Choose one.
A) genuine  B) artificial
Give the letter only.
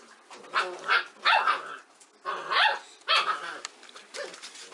A